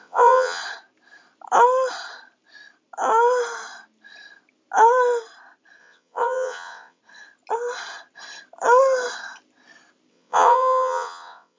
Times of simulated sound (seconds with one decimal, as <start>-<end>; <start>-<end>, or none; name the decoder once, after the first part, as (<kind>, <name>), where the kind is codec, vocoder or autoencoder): 0.0-0.6 (vocoder, WaveNeXt); 5.8-7.0; 10.1-11.6